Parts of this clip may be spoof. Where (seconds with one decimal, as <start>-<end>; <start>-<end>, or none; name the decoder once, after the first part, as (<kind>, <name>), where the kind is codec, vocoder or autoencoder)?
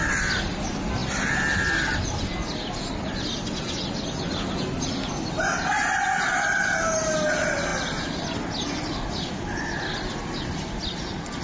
none